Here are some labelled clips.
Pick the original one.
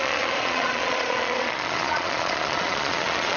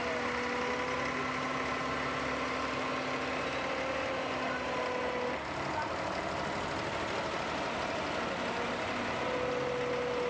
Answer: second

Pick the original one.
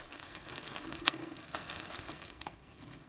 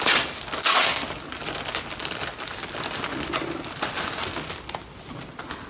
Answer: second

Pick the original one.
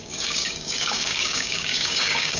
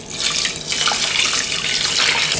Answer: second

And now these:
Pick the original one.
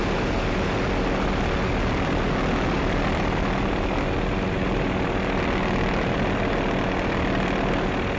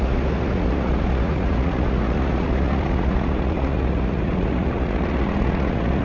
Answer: first